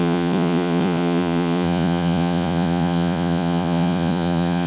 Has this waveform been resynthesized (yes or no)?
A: yes